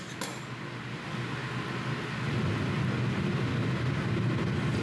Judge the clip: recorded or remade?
recorded